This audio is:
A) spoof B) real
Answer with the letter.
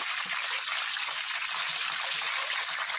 B